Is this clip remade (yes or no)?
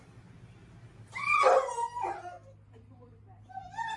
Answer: no